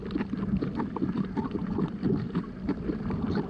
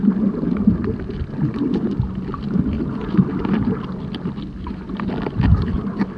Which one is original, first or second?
second